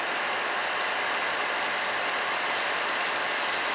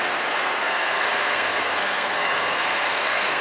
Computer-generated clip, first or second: second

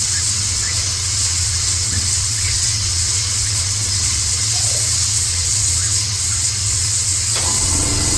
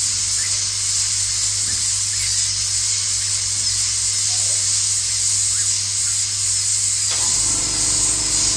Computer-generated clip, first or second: first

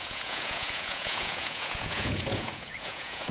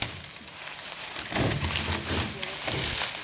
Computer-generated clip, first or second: first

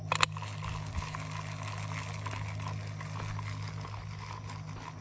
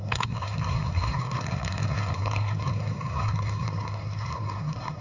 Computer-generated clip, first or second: second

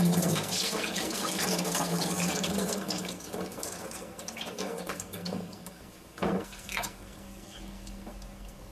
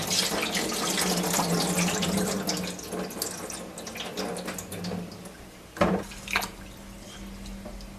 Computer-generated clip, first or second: first